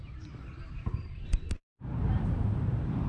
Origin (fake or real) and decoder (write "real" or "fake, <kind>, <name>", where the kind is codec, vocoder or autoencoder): fake, vocoder, BigVGAN v2